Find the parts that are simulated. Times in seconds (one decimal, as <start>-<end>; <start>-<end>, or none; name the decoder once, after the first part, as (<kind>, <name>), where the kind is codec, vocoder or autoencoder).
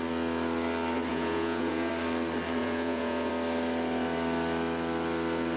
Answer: 1.1-1.9 (vocoder, Vocos); 2.6-3.3